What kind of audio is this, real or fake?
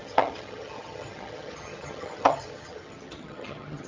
fake